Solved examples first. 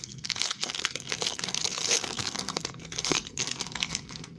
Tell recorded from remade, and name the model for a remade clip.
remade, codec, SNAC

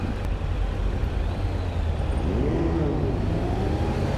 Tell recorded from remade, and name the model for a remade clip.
recorded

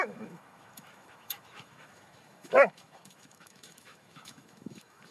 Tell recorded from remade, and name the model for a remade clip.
remade, autoencoder, DAC-VAE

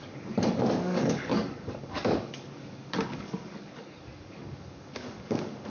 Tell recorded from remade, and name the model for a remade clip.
remade, codec, DAC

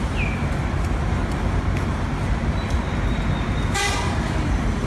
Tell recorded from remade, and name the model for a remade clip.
recorded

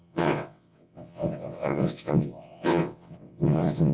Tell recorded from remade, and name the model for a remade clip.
remade, vocoder, WaveNeXt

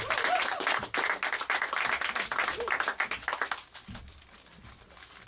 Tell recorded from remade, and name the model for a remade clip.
recorded